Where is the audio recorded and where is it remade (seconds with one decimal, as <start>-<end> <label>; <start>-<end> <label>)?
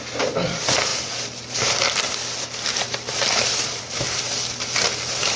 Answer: 0.0-5.4 recorded